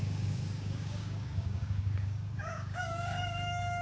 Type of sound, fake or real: fake